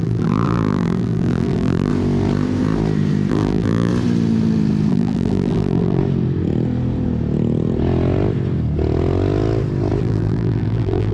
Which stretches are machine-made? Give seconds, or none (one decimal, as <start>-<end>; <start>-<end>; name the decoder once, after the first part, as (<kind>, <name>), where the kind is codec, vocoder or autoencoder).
0.0-1.9 (vocoder, BigVGAN v2); 3.3-3.9; 4.9-6.0; 10.0-11.1